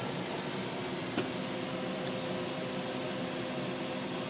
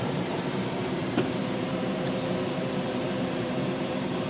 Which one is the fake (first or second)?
second